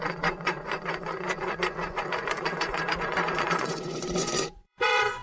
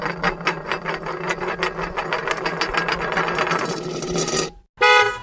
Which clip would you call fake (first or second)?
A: first